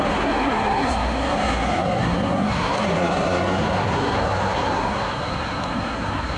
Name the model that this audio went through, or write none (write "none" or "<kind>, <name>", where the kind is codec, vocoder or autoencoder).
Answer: codec, SNAC